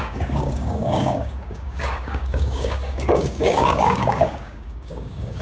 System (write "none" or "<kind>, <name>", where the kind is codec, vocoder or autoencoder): codec, DAC